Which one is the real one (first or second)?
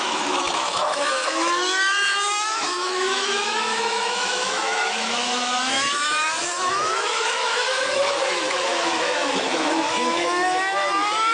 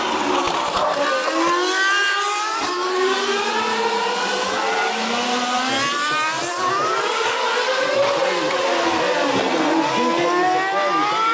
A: second